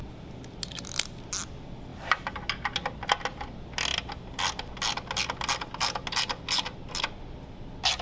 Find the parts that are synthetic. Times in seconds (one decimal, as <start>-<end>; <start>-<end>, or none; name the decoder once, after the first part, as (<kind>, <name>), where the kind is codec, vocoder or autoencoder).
none